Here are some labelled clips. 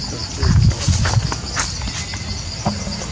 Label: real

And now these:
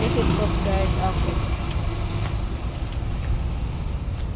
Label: real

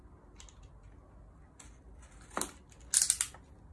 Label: real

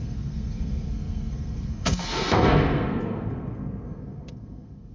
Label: fake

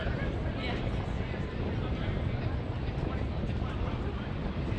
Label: real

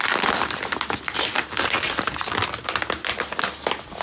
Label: real